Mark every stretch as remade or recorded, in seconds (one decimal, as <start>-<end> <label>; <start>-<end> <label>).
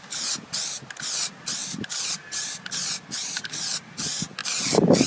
0.0-5.1 recorded